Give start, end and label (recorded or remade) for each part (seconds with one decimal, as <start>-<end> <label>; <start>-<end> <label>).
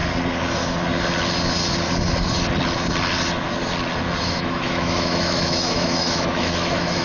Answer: 0.0-4.2 recorded; 4.2-7.0 remade